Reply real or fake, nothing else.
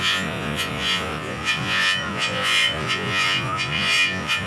fake